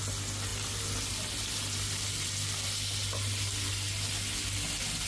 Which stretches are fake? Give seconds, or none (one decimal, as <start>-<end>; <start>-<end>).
none